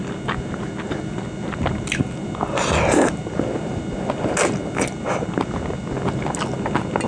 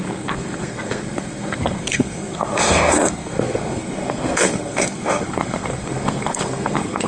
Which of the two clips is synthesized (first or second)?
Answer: second